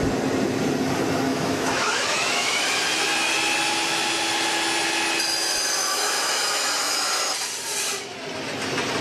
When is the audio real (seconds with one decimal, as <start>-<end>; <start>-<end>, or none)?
0.0-1.3; 2.6-5.8; 7.1-9.0